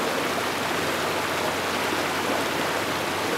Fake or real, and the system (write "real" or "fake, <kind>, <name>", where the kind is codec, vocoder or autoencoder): real